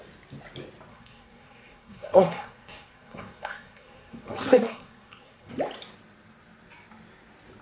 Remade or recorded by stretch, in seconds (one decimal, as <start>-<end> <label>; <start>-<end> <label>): 0.0-0.9 recorded; 0.9-5.5 remade; 5.5-7.6 recorded